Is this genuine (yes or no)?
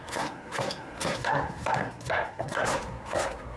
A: no